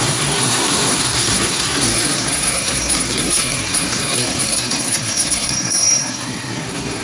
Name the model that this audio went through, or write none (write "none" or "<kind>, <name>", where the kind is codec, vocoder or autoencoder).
codec, SNAC